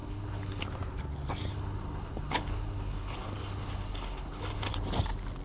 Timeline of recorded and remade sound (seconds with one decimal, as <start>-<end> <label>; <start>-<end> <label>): 0.0-0.6 remade; 0.6-1.5 recorded; 1.5-4.7 remade; 4.7-5.4 recorded